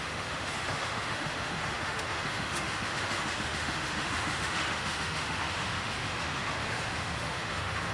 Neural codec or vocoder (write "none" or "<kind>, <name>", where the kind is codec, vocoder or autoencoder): autoencoder, DAC-VAE